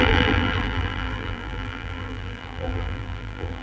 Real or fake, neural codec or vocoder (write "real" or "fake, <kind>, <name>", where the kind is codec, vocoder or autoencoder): fake, vocoder, BigVGAN v2